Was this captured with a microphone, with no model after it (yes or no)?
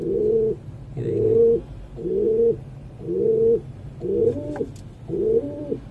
yes